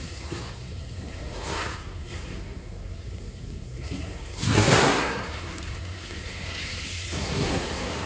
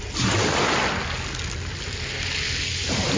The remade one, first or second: first